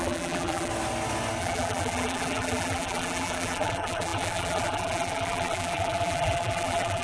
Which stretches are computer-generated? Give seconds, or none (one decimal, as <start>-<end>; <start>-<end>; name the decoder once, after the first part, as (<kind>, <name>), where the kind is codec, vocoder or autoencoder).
0.0-0.7 (vocoder, BigVGAN v2); 1.4-7.0